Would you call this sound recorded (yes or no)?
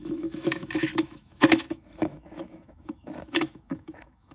no